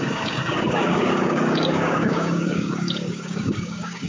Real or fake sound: fake